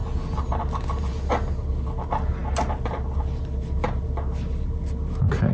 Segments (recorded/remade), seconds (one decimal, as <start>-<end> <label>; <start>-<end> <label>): 0.0-5.5 recorded